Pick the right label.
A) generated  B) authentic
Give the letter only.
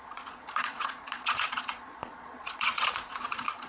A